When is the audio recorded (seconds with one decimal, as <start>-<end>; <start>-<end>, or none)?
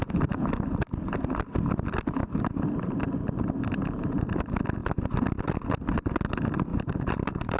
0.0-2.2; 3.0-6.7